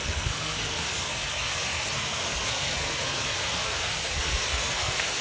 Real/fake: fake